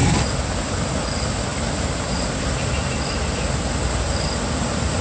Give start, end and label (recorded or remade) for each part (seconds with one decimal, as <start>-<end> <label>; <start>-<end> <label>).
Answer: 0.0-5.0 recorded